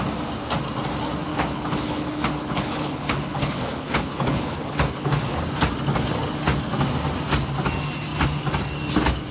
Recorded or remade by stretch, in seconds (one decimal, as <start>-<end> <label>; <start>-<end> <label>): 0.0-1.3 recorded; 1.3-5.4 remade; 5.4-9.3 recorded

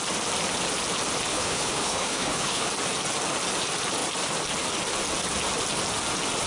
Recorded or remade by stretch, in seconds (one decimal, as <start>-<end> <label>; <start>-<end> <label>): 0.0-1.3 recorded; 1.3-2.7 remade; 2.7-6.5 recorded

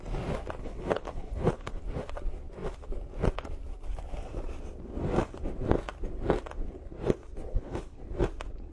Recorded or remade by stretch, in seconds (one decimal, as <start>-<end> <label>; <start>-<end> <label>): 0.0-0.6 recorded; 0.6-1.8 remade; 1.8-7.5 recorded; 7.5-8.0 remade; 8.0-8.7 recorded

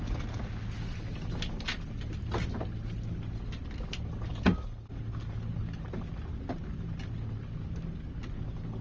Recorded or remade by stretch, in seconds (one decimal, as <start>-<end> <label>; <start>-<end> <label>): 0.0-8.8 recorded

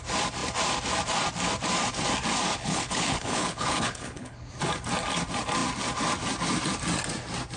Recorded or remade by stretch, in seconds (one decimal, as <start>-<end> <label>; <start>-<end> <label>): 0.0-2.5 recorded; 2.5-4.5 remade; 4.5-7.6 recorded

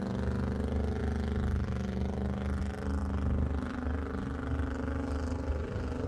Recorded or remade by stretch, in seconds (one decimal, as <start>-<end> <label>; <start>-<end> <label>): 0.0-6.1 recorded